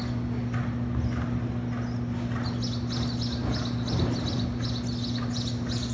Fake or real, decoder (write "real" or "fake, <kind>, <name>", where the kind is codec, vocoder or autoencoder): real